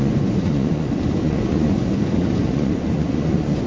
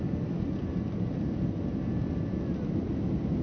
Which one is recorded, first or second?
second